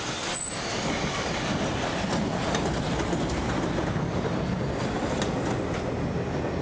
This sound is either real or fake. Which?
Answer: real